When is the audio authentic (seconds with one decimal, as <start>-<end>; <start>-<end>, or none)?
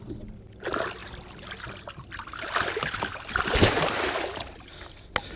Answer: 0.0-5.4